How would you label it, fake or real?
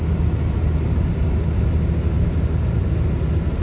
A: real